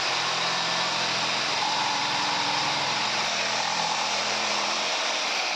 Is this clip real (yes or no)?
no